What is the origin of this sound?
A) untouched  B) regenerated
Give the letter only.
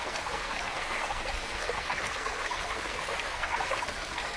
B